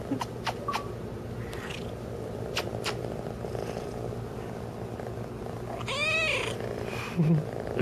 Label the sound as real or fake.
real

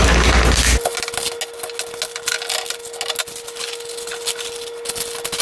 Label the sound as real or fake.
real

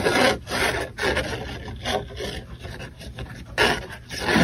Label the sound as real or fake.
real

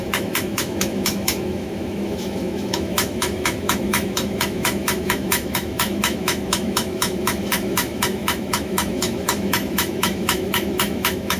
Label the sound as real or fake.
fake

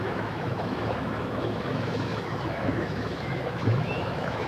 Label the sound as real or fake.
fake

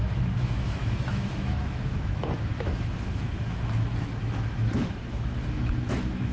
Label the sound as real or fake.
fake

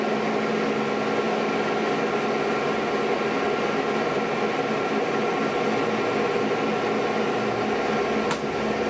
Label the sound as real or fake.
real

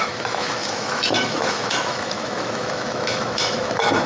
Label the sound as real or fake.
fake